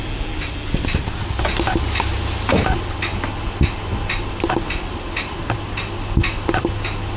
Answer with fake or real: real